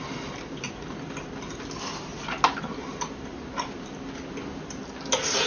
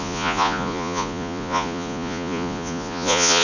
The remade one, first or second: second